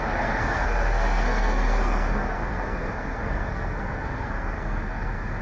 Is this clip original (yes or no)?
no